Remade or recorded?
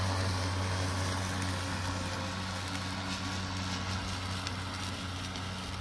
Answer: recorded